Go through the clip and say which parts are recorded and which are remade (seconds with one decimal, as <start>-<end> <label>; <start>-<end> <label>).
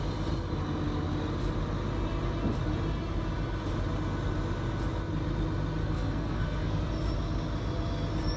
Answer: 0.0-5.8 recorded; 5.8-6.8 remade; 6.8-8.4 recorded